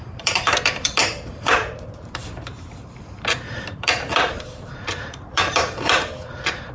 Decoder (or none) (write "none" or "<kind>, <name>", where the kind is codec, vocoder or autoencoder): vocoder, BigVGAN v2